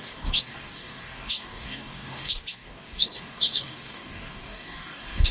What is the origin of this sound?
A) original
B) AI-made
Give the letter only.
B